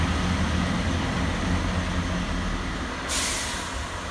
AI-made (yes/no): no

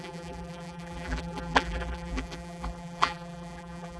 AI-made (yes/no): yes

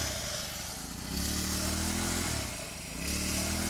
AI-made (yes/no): no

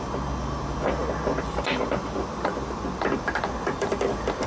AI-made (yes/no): no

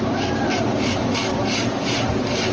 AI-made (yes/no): yes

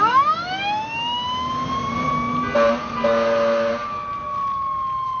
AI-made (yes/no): no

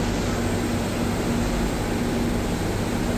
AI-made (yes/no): no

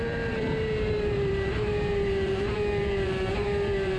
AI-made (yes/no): yes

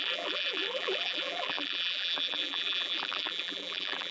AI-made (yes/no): yes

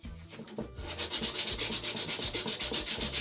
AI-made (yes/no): no